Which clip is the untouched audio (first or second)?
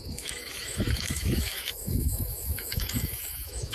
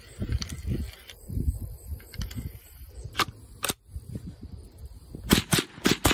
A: second